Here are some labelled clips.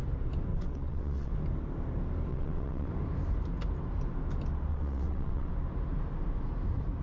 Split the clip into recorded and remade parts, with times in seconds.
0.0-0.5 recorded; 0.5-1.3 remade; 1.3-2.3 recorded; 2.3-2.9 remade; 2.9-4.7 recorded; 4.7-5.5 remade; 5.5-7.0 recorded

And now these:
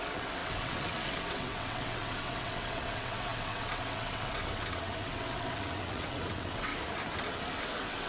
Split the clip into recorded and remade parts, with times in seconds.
0.0-6.7 remade; 6.7-7.6 recorded; 7.6-8.1 remade

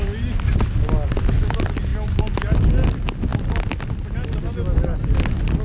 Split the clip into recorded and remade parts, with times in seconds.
0.0-5.6 recorded

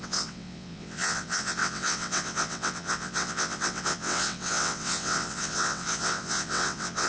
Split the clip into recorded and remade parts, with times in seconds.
0.0-7.1 remade

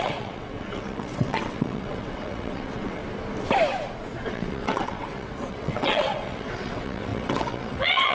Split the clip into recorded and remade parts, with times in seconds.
0.0-3.0 remade; 3.0-4.3 recorded; 4.3-8.1 remade

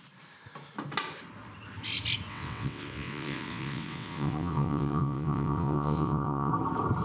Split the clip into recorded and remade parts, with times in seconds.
0.0-2.3 recorded; 2.3-6.5 remade; 6.5-7.0 recorded